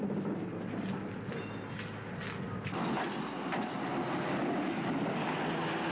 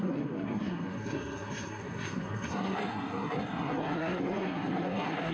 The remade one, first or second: second